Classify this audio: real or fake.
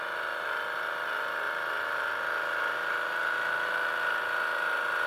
real